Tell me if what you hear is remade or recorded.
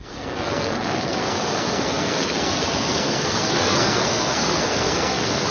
remade